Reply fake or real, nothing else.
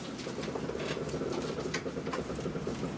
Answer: real